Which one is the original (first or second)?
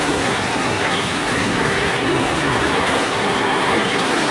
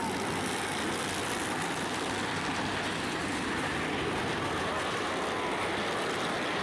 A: second